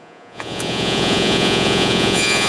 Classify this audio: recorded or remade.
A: remade